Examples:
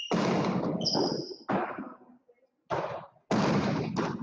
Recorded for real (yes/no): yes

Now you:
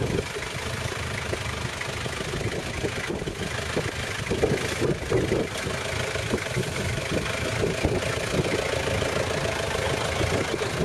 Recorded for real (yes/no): yes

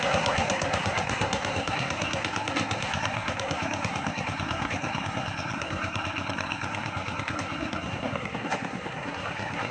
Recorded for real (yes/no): no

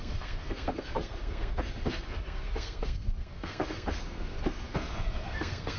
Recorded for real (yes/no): no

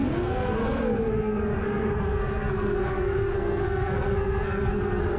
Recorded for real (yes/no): no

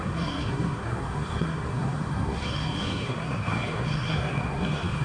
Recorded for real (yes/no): no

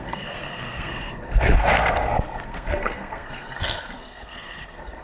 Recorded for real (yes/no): no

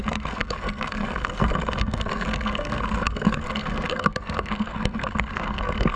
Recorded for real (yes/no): no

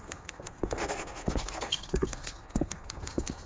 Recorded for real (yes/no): no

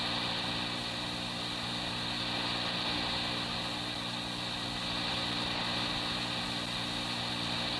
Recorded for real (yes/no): yes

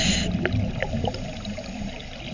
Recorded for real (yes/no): yes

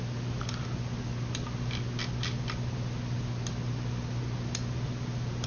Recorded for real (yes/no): yes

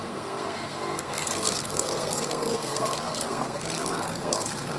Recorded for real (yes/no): no